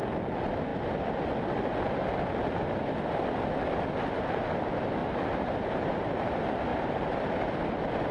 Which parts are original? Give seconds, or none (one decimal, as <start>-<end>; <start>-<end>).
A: 0.0-5.0; 5.9-6.7; 7.5-8.1